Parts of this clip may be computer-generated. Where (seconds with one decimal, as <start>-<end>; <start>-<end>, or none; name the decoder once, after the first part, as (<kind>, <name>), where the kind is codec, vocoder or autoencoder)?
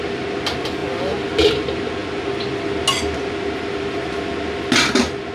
none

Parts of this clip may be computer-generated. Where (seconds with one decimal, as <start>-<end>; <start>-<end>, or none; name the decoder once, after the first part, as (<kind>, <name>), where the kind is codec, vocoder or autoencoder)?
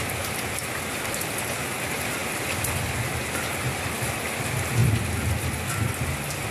none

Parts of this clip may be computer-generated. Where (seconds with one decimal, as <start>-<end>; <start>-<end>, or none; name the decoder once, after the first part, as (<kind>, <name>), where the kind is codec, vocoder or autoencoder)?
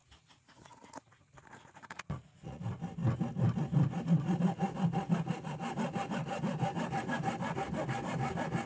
0.0-2.6 (vocoder, Vocos)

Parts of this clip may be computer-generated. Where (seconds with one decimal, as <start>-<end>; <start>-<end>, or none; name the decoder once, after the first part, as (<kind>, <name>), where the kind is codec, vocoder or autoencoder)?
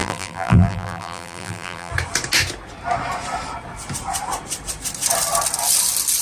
0.0-1.9 (vocoder, BigVGAN v2)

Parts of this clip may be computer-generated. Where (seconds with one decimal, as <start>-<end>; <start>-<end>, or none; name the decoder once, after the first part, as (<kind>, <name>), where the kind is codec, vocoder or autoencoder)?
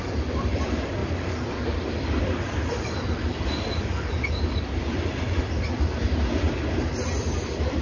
0.0-6.1 (vocoder, BigVGAN v2); 7.1-7.8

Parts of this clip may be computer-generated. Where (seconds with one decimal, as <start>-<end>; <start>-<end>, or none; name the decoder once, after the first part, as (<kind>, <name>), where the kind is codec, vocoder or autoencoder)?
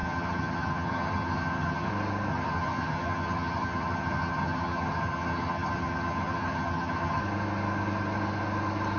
0.0-1.9 (vocoder, HiFi-GAN); 2.3-7.2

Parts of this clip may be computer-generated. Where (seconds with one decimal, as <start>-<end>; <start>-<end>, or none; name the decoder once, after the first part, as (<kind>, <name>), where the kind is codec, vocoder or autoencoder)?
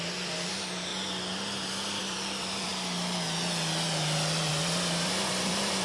0.0-0.9 (vocoder, BigVGAN v2); 2.0-2.7; 4.5-5.8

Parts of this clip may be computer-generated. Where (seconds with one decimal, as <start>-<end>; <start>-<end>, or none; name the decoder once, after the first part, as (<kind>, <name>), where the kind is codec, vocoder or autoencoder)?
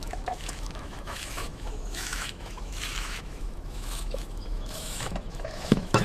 0.0-6.0 (autoencoder, DAC-VAE)